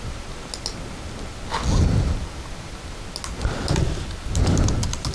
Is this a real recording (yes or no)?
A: yes